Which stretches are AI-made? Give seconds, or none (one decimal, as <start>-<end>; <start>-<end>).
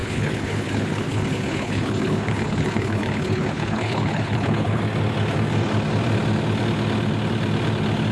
0.0-4.8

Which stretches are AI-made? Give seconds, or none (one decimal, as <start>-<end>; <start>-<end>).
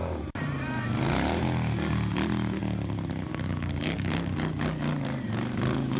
3.3-6.0